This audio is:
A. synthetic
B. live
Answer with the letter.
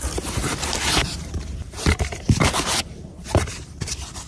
A